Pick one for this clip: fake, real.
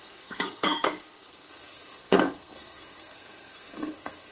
fake